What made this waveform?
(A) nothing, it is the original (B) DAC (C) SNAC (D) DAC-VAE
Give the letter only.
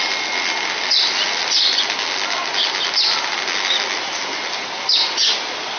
A